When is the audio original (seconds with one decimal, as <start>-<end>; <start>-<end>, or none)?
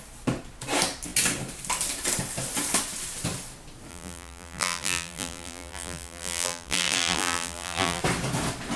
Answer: 0.0-3.9; 8.0-8.8